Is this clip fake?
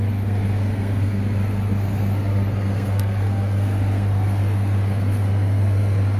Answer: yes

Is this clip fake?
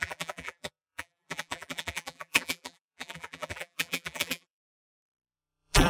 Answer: yes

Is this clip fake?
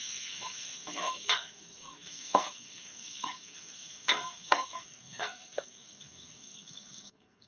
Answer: yes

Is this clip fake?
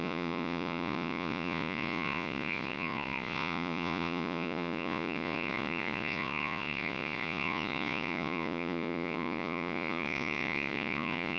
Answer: yes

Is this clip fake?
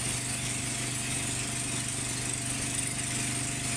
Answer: no